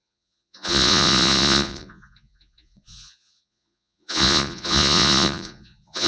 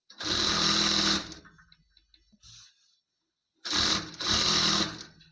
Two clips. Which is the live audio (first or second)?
second